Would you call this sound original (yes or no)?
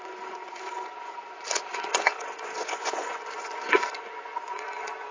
no